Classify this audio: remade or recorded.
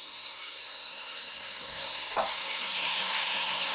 remade